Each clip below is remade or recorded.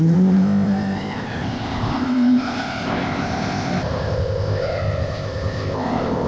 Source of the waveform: remade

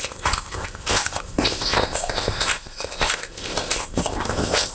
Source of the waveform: remade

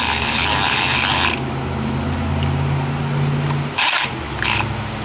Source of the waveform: recorded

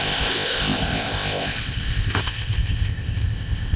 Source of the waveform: remade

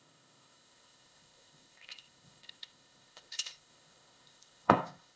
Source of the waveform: remade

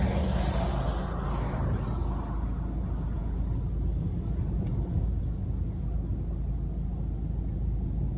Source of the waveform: recorded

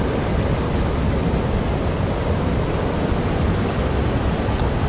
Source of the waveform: recorded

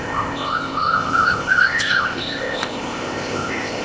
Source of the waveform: remade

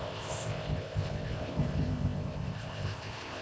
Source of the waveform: remade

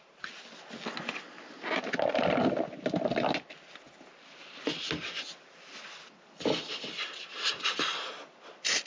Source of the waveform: recorded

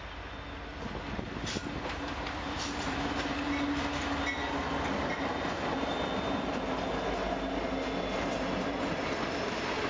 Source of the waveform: recorded